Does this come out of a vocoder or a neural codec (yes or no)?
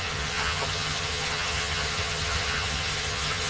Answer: yes